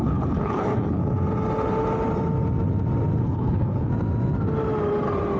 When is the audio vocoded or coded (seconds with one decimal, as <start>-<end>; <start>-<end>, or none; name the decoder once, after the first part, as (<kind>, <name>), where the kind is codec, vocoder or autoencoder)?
0.0-1.0 (codec, HILCodec); 3.2-3.9